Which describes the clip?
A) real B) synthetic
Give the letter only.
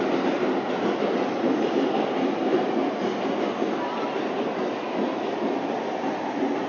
A